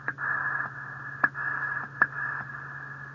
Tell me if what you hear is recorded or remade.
recorded